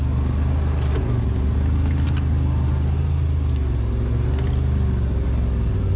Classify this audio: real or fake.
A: real